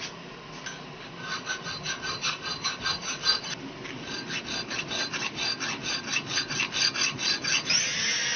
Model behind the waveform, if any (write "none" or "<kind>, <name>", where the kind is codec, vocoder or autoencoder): none